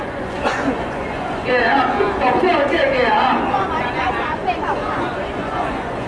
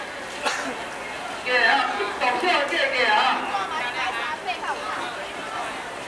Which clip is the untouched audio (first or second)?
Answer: second